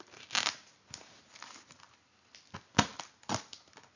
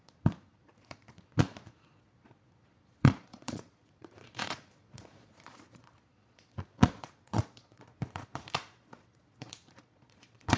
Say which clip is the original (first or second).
first